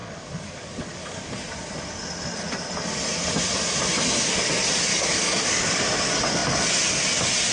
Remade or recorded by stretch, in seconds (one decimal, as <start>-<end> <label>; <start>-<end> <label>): 0.0-1.3 remade; 1.3-4.9 recorded; 4.9-5.8 remade; 5.8-7.5 recorded